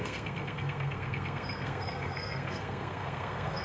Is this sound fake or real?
fake